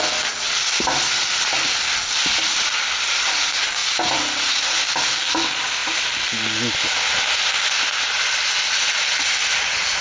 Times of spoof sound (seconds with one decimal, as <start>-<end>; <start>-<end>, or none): none